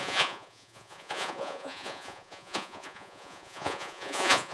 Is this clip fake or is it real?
fake